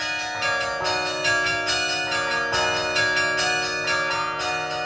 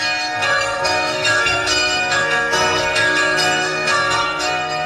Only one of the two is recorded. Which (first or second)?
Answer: first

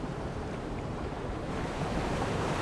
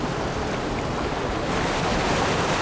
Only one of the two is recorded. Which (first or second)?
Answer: second